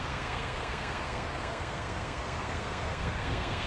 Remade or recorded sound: remade